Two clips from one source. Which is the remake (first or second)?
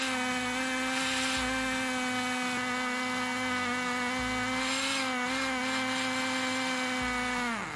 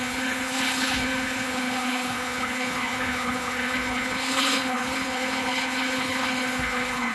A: second